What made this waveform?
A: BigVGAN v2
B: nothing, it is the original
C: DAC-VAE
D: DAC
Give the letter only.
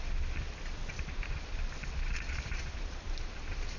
B